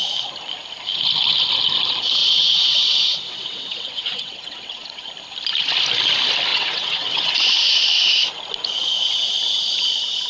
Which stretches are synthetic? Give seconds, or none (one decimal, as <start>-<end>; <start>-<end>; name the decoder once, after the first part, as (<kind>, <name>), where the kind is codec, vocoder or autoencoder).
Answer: 2.2-5.1 (vocoder, WaveNeXt); 6.5-7.3

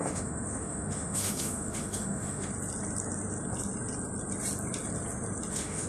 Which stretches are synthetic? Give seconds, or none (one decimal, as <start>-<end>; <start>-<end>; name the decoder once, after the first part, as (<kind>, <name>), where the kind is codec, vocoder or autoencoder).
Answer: 0.0-2.5 (autoencoder, DAC-VAE); 5.5-5.9

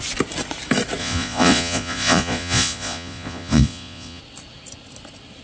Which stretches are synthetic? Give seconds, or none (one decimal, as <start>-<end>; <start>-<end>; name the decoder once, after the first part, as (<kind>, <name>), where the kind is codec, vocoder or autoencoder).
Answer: 1.0-4.2 (vocoder, Vocos)

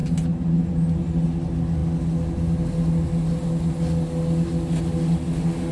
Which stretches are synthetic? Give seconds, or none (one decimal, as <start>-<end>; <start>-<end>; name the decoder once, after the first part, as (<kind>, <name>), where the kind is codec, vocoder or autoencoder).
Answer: none

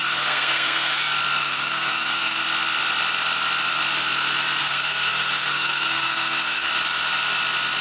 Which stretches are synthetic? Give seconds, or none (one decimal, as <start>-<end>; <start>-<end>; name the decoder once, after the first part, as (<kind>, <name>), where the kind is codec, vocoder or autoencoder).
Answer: 0.0-0.9 (codec, SNAC); 1.4-2.4; 4.6-6.7

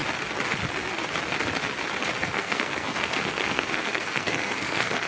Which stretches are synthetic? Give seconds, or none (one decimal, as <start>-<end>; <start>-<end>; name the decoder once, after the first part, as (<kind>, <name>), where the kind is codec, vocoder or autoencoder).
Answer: 2.2-5.1 (codec, SNAC)